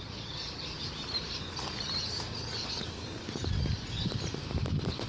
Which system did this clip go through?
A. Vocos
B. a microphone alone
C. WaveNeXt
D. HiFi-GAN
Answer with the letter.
B